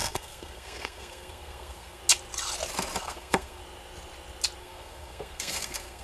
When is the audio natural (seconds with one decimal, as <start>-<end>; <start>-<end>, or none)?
2.0-3.0; 3.6-4.6